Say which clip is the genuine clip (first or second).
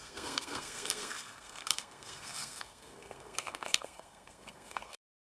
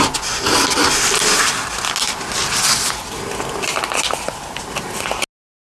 second